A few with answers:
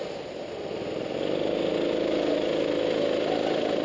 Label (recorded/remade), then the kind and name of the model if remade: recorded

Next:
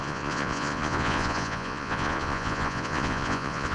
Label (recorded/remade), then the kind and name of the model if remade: remade, vocoder, Vocos